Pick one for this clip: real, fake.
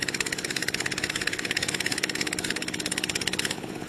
fake